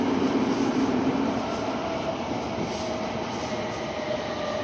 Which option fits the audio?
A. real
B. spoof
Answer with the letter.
A